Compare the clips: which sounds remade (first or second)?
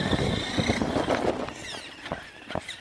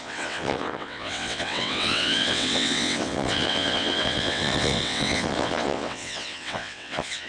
second